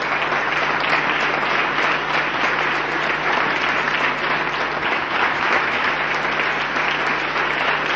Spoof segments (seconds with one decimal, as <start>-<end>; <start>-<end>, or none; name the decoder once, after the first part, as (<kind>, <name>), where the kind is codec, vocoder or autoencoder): 4.8-5.9 (autoencoder, DAC-VAE)